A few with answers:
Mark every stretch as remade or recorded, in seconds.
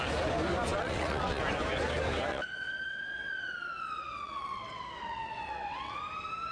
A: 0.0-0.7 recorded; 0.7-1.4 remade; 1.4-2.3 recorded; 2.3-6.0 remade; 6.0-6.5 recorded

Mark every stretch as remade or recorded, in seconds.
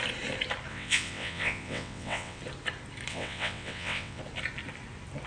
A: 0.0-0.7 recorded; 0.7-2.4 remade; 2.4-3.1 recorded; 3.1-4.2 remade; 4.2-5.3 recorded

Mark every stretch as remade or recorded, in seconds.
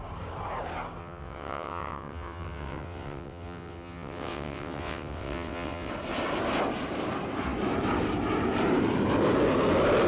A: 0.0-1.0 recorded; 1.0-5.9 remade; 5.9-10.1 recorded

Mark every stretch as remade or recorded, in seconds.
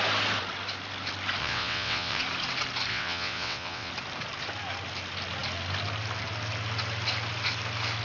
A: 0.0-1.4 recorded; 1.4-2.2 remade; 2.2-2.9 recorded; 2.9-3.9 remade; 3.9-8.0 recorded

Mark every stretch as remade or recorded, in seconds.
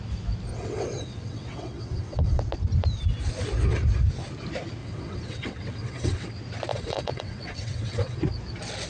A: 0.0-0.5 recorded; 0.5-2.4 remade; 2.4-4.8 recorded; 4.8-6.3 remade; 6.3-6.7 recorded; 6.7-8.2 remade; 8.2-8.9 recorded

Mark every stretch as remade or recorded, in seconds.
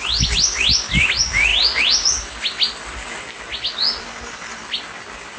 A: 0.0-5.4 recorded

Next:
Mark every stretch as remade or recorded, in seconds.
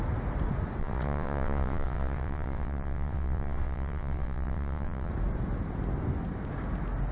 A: 0.0-0.8 recorded; 0.8-5.1 remade; 5.1-7.1 recorded